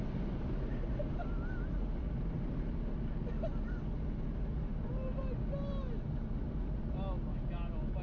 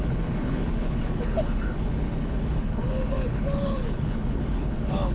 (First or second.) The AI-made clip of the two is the second